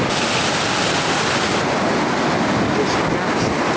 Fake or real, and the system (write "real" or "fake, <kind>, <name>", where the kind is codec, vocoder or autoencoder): real